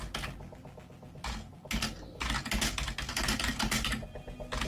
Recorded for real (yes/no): yes